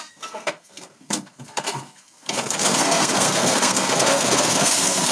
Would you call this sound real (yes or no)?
no